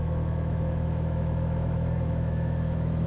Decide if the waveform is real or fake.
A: fake